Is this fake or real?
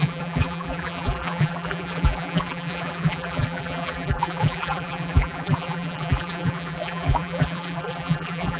fake